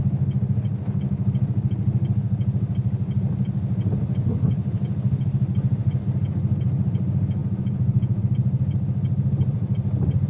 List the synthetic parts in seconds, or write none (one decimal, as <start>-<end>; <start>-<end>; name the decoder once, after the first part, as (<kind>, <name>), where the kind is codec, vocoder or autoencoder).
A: 7.4-8.2 (vocoder, Vocos)